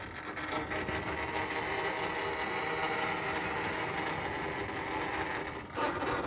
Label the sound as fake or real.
real